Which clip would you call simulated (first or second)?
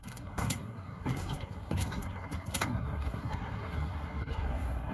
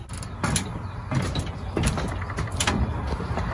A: first